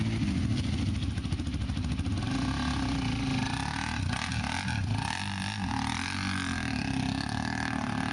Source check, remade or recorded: recorded